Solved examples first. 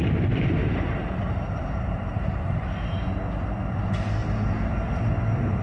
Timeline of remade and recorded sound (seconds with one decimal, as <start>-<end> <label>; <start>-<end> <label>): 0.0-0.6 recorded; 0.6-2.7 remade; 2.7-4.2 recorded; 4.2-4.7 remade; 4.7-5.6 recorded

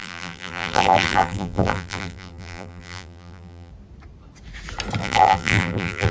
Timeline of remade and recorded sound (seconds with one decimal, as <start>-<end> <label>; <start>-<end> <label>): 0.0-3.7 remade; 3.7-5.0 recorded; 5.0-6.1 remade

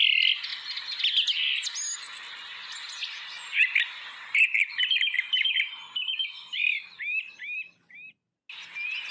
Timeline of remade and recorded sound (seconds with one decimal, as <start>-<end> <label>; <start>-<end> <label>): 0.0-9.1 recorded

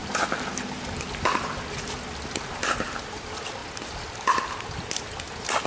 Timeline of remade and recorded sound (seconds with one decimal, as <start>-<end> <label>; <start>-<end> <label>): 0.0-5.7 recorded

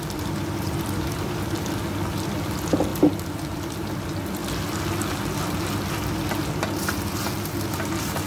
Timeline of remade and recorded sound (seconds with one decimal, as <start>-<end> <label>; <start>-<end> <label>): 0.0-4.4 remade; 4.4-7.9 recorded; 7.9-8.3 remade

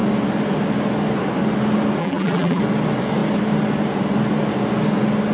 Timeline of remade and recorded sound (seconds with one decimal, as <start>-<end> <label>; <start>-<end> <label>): 0.0-2.0 recorded; 2.0-2.6 remade; 2.6-5.3 recorded